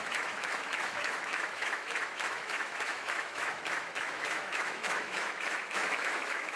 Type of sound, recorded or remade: remade